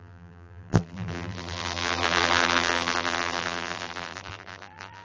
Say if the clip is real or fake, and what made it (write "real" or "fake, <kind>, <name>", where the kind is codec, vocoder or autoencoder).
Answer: fake, vocoder, BigVGAN v2